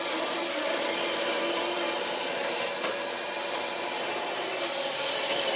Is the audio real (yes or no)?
yes